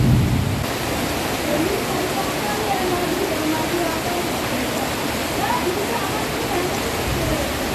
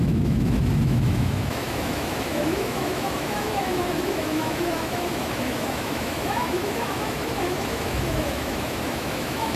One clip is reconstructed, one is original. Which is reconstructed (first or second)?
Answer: second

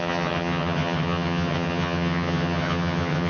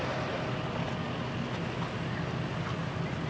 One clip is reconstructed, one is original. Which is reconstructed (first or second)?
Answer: first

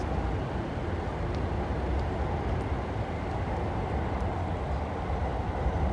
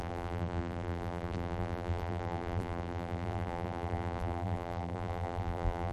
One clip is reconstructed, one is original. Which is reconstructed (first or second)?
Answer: second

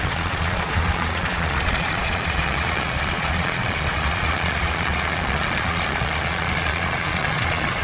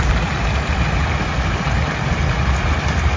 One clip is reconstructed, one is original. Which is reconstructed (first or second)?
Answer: first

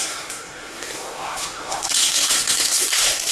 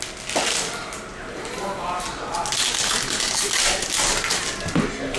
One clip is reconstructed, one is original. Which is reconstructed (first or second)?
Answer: first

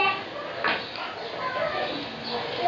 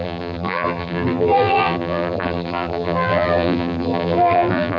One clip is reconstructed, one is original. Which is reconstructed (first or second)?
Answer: second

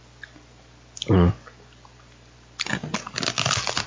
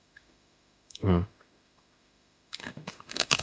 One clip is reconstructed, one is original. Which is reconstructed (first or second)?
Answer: second